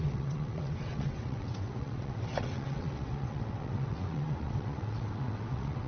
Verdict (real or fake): fake